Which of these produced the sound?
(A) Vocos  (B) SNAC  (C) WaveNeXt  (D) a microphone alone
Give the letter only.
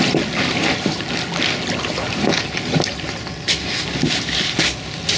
D